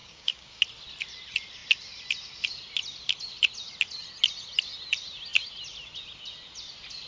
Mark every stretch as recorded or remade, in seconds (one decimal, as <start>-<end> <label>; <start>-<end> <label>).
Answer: 0.0-0.6 remade; 0.6-7.1 recorded